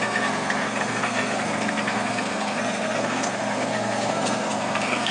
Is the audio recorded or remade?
remade